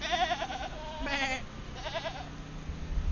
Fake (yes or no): no